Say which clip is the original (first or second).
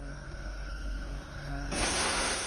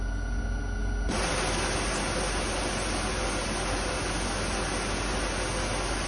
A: second